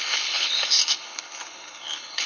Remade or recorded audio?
remade